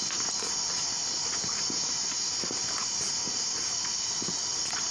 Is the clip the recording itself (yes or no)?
yes